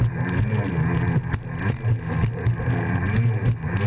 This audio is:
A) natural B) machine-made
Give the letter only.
A